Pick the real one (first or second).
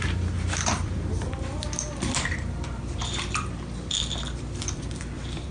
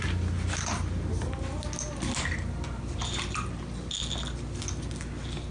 second